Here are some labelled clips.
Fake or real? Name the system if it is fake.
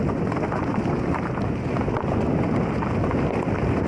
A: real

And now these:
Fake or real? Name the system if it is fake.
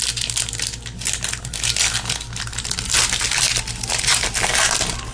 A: real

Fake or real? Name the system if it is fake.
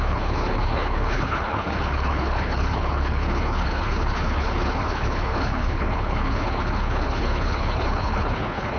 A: fake, codec, HILCodec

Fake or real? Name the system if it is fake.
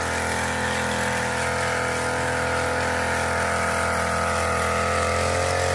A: real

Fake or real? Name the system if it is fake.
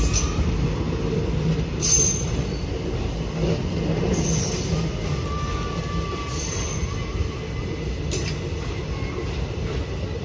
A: real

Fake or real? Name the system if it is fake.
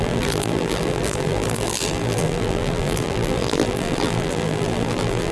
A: fake, vocoder, BigVGAN v2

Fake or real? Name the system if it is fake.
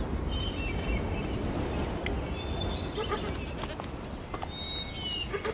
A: real